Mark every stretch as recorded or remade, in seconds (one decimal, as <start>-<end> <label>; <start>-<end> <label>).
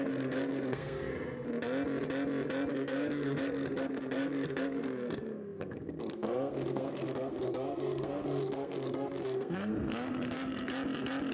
0.0-1.1 remade; 1.1-2.7 recorded; 2.7-10.7 remade; 10.7-11.3 recorded